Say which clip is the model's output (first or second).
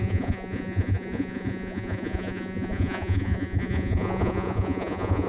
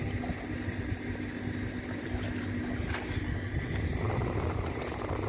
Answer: first